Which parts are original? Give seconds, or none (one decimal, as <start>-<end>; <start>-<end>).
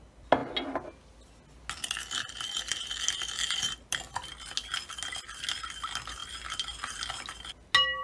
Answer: 0.0-8.0